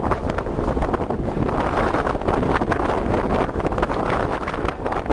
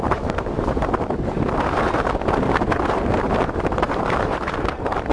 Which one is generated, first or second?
second